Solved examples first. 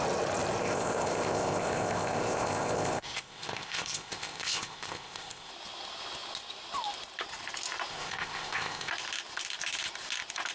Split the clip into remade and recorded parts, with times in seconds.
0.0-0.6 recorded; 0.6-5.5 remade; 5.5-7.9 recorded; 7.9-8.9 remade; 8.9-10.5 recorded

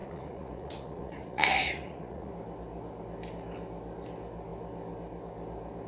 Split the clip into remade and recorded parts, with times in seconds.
0.0-2.3 remade; 2.3-5.9 recorded

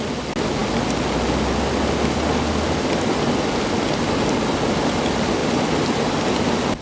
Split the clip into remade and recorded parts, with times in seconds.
0.0-6.8 recorded